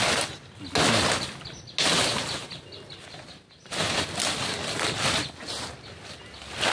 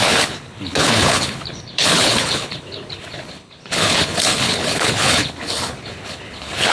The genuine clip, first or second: first